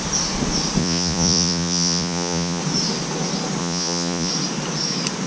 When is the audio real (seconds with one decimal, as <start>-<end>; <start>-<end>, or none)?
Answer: 0.0-0.8; 2.6-3.6; 4.3-5.3